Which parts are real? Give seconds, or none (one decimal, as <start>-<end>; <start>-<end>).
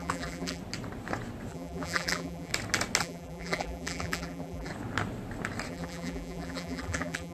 0.6-1.5; 2.5-3.0; 4.7-5.7